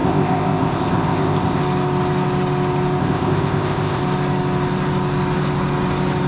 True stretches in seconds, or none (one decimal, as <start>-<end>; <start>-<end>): 1.6-3.0; 4.0-6.3